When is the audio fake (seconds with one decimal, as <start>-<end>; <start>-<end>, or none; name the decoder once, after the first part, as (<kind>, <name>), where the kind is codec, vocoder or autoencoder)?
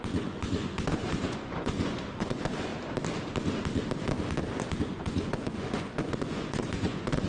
0.0-2.7 (vocoder, Vocos); 4.8-7.3